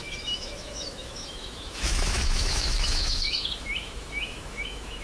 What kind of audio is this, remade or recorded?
remade